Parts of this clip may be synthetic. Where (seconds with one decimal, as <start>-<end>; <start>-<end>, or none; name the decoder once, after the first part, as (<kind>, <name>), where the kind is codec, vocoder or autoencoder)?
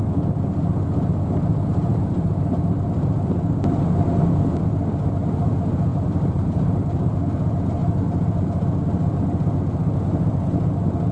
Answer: 1.9-2.7 (vocoder, BigVGAN v2); 5.9-6.7